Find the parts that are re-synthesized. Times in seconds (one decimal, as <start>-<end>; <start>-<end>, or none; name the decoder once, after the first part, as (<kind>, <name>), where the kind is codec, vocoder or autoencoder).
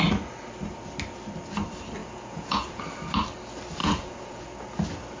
2.0-2.8 (vocoder, Vocos); 3.8-4.4